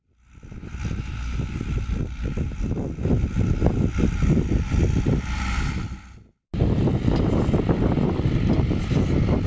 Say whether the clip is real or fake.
real